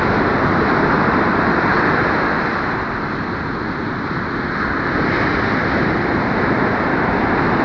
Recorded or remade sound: recorded